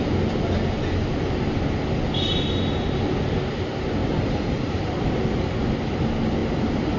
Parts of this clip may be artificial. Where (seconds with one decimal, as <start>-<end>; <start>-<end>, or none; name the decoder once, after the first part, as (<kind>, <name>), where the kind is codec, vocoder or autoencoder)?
4.0-5.4 (vocoder, BigVGAN v2)